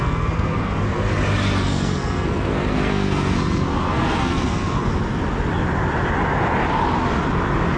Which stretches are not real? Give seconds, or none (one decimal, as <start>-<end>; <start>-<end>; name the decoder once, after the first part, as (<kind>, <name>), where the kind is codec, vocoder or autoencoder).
0.0-1.1 (codec, SNAC); 1.7-4.9